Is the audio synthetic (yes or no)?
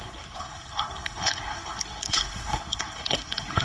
yes